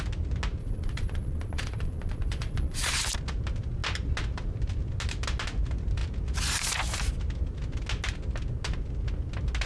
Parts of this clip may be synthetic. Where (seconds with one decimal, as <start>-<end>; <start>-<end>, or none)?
0.6-2.9